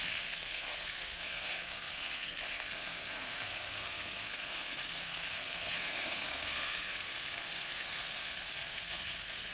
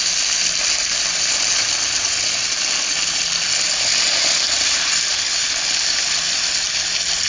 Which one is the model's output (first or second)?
first